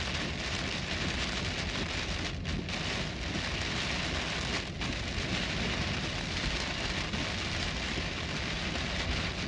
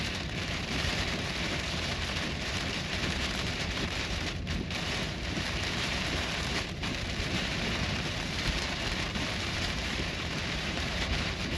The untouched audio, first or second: first